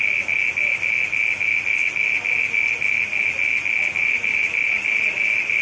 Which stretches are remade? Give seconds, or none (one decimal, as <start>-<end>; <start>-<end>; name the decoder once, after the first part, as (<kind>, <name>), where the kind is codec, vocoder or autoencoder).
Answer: none